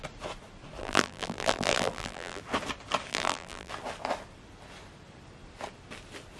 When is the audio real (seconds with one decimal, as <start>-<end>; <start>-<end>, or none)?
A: 0.0-0.8; 2.4-3.1; 3.7-6.4